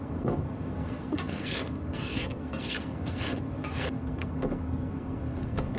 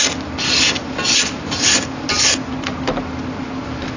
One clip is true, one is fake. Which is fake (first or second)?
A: first